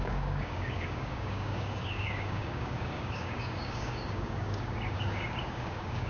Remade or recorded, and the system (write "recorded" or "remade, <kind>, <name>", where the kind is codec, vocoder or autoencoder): remade, codec, DAC